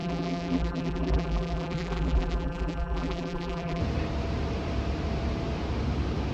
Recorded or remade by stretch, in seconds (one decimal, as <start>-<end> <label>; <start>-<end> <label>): 0.0-3.8 remade; 3.8-6.3 recorded